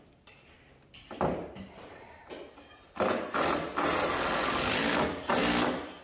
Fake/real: fake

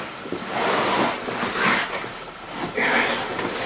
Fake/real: real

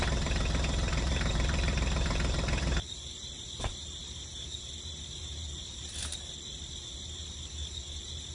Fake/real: fake